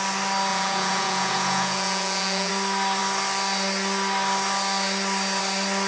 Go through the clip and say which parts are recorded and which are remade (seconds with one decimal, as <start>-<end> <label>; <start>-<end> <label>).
0.0-0.5 recorded; 0.5-2.5 remade; 2.5-5.9 recorded